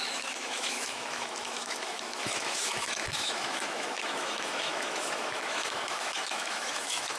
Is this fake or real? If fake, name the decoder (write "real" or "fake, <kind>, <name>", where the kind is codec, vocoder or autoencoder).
fake, autoencoder, DAC-VAE